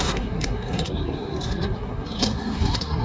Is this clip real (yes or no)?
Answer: no